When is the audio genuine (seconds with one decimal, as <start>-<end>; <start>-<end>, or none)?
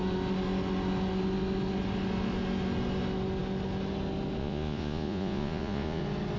0.0-4.4; 6.0-6.4